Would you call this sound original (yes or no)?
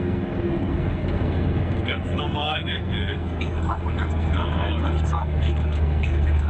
no